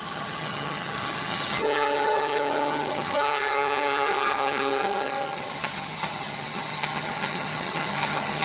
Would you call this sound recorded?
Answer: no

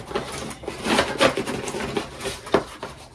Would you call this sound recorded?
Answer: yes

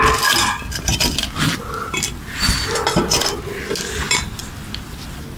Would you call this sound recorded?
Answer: yes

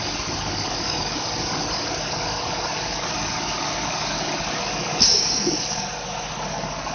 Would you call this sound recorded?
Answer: no